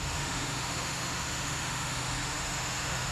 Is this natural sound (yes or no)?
no